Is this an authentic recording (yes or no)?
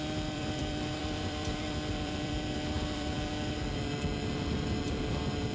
no